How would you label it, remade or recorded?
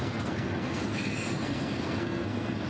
remade